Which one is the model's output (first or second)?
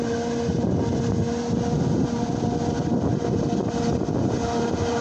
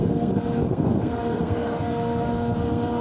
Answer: second